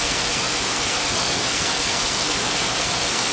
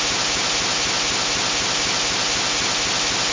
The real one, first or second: second